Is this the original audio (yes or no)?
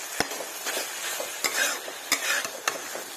yes